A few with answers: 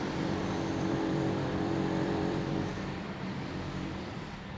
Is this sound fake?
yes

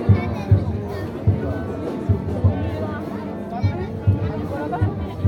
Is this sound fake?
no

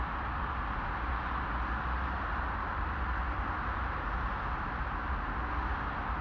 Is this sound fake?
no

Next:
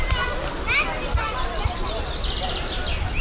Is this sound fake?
no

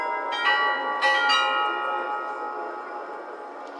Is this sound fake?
no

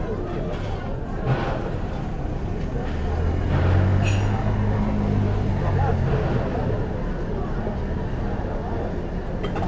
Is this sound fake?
no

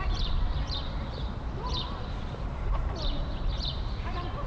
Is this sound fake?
yes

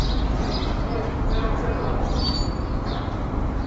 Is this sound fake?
no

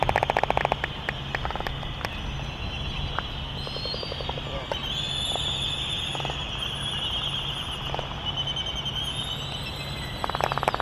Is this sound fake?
no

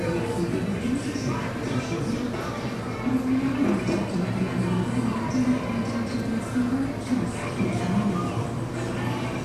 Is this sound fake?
no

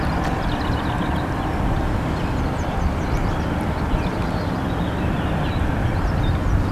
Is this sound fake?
no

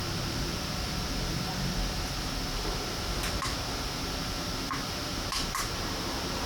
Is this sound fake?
yes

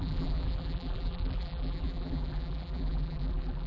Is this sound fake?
yes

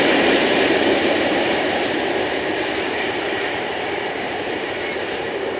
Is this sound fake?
yes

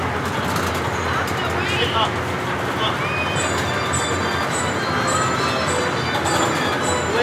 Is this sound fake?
no